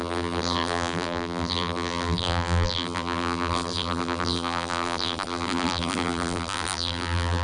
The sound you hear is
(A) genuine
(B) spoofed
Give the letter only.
B